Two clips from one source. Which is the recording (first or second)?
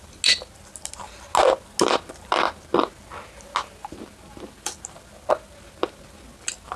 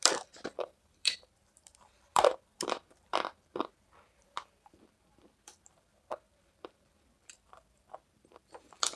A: first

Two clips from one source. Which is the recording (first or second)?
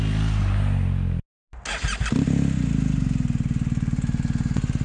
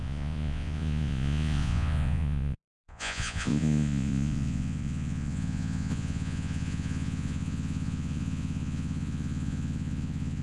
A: first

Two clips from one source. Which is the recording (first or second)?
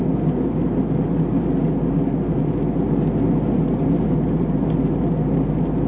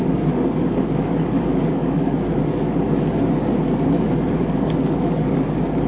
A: first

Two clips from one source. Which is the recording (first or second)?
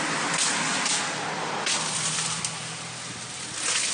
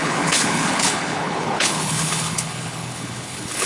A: first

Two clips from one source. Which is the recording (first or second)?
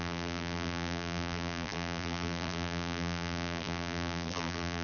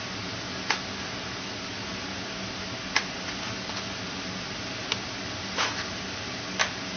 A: second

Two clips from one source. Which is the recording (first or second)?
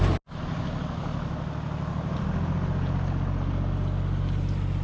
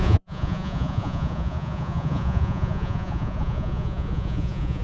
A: first